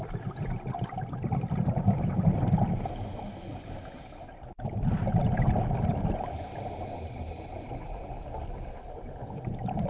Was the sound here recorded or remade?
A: recorded